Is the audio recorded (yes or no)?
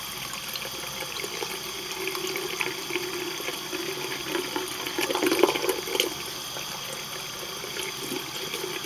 yes